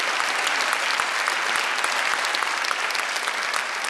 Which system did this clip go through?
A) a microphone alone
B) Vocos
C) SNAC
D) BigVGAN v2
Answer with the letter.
A